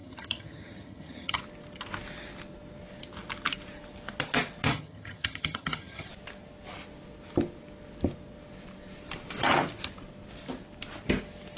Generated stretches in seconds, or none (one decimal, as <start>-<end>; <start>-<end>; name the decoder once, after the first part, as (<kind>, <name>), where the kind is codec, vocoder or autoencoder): 0.0-1.4 (vocoder, HiFi-GAN); 4.7-6.1